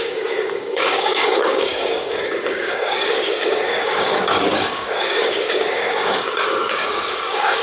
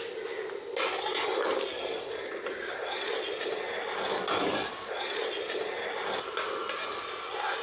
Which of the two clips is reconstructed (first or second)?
first